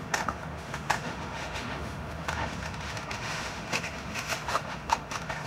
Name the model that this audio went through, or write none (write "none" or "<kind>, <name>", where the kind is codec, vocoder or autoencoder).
autoencoder, DAC-VAE